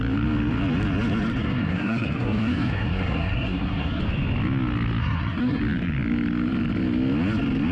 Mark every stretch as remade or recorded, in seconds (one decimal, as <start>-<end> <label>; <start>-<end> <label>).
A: 0.0-1.4 recorded; 1.4-4.0 remade; 4.0-5.0 recorded; 5.0-5.6 remade; 5.6-7.7 recorded